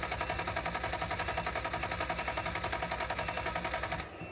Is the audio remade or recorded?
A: recorded